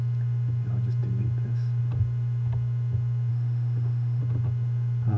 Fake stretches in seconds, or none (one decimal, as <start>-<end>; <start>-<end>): 3.3-4.2